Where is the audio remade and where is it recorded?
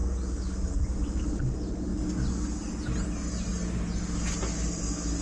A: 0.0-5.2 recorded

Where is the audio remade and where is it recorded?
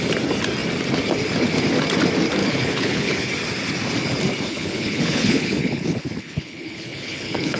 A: 0.0-2.4 recorded; 2.4-3.3 remade; 3.3-4.5 recorded; 4.5-7.6 remade